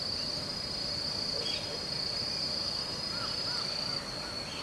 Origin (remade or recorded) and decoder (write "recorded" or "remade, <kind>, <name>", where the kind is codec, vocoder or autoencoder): recorded